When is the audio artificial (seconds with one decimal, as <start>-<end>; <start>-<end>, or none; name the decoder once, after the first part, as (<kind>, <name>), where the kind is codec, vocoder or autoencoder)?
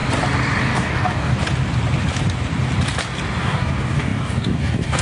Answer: 0.6-1.4 (codec, DAC); 3.4-5.0